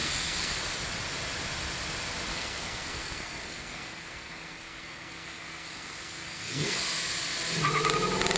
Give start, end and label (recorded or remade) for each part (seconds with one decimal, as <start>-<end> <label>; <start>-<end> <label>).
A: 0.0-0.6 remade; 0.6-2.3 recorded; 2.3-6.8 remade; 6.8-8.4 recorded